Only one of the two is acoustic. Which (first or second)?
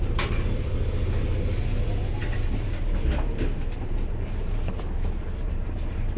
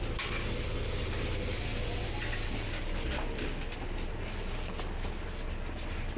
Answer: second